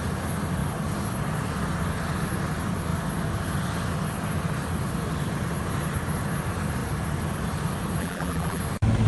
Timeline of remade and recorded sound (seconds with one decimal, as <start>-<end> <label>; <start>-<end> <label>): 0.0-8.0 recorded; 8.0-8.6 remade; 8.6-9.1 recorded